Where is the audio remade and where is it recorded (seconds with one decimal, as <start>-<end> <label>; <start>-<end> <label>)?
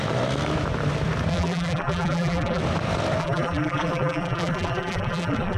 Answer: 0.0-1.3 recorded; 1.3-2.6 remade; 2.6-3.2 recorded; 3.2-5.6 remade